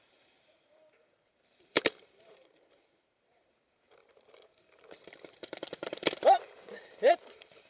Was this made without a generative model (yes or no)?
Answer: no